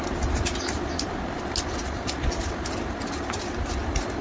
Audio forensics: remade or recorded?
recorded